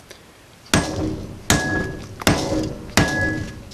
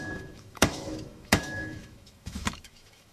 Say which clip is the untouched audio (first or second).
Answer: first